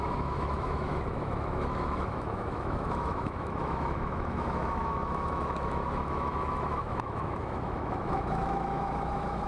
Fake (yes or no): yes